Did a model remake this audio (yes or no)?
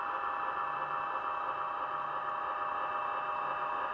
no